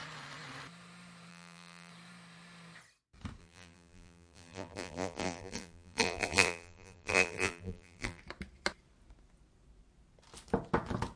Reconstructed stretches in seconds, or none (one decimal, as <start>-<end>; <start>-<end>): 1.3-1.9; 3.4-8.2